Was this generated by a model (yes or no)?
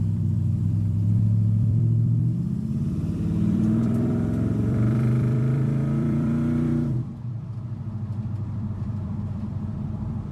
yes